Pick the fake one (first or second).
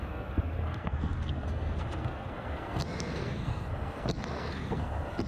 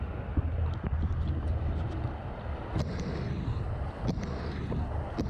first